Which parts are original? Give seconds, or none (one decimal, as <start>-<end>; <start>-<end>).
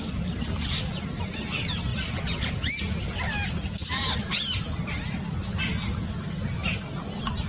0.0-7.5